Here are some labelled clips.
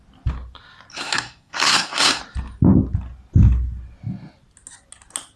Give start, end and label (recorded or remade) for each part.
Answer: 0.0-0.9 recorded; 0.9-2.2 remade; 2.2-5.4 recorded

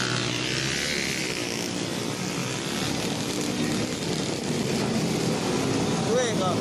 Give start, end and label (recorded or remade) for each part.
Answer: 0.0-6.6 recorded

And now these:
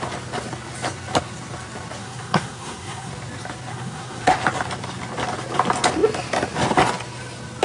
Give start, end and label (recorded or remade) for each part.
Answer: 0.0-2.0 recorded; 2.0-3.1 remade; 3.1-3.7 recorded; 3.7-4.3 remade; 4.3-7.6 recorded

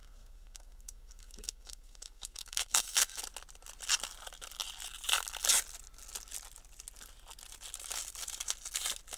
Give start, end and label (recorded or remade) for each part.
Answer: 0.0-3.2 remade; 3.2-9.2 recorded

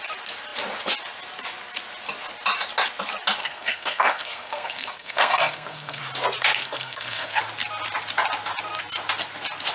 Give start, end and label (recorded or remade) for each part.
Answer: 0.0-3.4 recorded; 3.4-6.0 remade; 6.0-6.6 recorded; 6.6-7.4 remade; 7.4-9.7 recorded

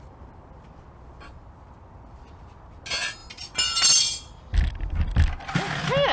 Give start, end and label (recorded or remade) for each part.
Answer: 0.0-6.1 recorded